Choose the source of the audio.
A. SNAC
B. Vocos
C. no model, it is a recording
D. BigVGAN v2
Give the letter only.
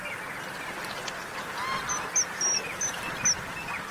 C